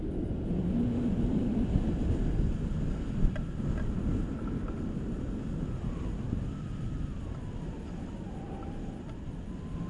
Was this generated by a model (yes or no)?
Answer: no